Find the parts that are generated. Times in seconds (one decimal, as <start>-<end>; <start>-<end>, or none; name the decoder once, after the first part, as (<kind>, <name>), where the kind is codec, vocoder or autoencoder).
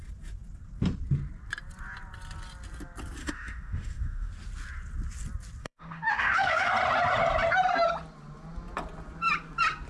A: 3.2-4.3 (autoencoder, DAC-VAE); 5.6-6.7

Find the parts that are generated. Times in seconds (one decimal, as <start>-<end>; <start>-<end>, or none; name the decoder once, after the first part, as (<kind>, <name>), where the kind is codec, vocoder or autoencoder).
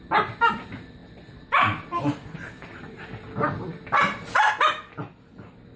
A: none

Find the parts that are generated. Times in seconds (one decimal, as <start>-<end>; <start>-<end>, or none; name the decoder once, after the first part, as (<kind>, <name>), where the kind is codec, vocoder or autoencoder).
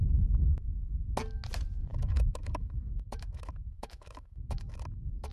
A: 1.9-5.3 (autoencoder, DAC-VAE)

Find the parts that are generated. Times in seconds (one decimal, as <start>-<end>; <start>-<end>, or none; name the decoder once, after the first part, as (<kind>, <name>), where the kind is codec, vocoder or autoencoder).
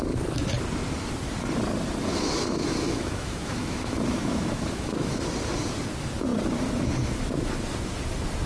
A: 2.1-5.2 (autoencoder, DAC-VAE)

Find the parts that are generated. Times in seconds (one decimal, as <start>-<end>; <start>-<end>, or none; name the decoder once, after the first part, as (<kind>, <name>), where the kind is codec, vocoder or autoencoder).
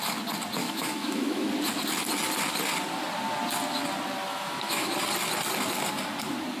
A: 0.6-1.5 (autoencoder, DAC-VAE); 4.3-4.9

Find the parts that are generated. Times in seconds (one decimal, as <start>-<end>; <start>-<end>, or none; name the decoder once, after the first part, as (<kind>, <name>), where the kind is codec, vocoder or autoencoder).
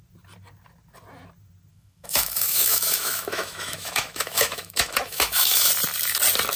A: 1.7-5.7 (autoencoder, DAC-VAE)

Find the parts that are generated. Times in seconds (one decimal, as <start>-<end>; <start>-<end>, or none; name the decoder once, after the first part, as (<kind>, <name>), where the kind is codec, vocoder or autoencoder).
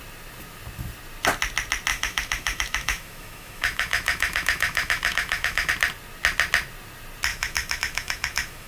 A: 1.9-5.7 (autoencoder, DAC-VAE); 7.3-8.7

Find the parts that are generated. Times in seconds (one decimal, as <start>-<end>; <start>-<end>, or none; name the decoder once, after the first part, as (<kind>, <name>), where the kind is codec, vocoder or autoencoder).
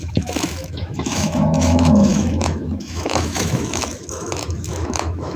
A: 0.0-5.4 (autoencoder, DAC-VAE)